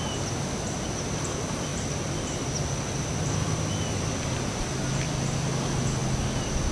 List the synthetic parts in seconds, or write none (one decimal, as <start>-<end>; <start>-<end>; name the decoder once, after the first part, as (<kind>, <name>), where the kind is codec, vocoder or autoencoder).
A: none